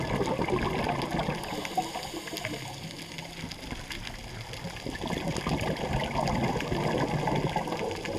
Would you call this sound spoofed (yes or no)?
no